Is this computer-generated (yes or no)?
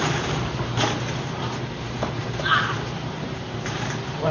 yes